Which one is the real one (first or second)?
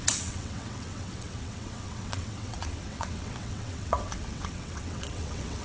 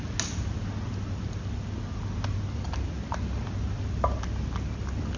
second